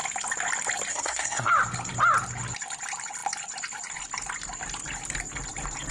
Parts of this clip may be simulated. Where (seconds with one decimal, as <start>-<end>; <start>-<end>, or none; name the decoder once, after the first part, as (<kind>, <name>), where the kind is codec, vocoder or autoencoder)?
0.9-1.5 (codec, SNAC)